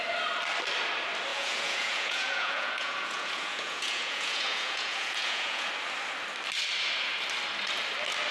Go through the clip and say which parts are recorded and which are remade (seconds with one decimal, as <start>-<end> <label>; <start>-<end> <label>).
0.0-1.3 recorded; 1.3-5.7 remade; 5.7-8.3 recorded